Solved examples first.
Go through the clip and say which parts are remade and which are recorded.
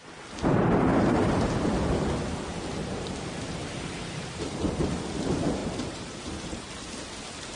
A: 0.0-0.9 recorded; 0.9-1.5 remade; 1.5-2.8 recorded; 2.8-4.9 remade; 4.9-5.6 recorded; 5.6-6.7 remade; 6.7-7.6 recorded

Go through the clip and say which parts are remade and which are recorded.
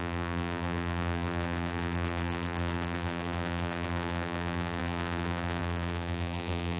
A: 0.0-6.8 remade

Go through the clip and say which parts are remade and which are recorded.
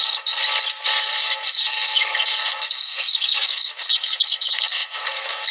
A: 0.0-0.4 remade; 0.4-1.0 recorded; 1.0-5.5 remade